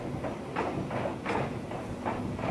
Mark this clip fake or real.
real